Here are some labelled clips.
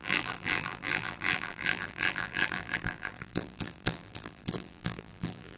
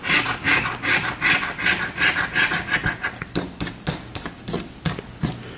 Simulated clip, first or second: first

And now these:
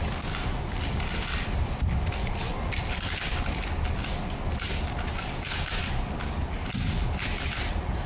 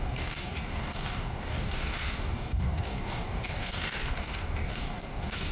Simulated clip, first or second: second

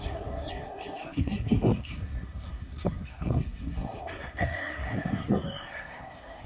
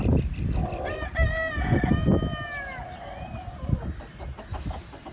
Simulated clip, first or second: first